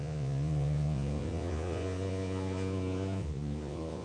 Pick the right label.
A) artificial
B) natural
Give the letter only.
A